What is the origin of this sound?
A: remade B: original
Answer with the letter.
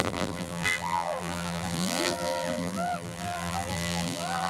A